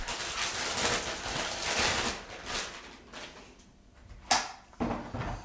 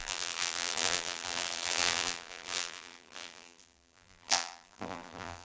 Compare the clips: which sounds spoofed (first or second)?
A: second